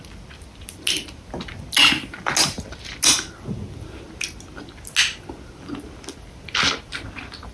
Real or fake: real